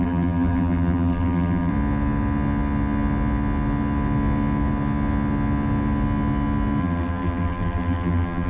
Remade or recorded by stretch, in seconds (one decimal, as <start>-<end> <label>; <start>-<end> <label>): 0.0-1.7 remade; 1.7-6.8 recorded; 6.8-8.5 remade